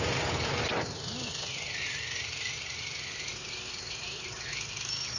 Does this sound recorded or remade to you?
recorded